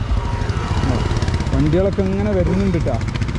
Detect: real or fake real